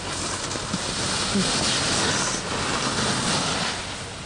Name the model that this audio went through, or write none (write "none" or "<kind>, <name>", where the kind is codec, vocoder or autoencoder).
none